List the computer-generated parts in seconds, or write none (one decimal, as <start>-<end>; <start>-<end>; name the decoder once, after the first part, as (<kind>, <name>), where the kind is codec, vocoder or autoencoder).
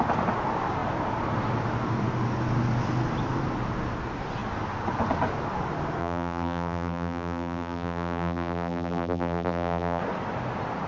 6.0-10.0 (vocoder, BigVGAN v2)